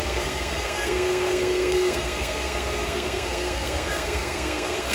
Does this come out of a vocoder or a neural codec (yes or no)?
yes